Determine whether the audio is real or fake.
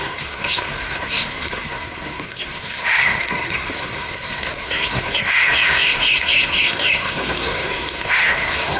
fake